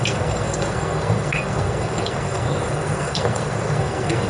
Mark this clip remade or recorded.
remade